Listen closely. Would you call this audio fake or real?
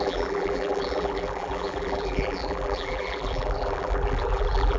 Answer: fake